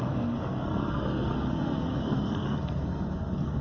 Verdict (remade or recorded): remade